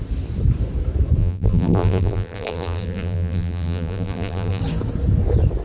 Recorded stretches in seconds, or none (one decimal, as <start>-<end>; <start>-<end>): 0.0-1.2; 4.6-5.6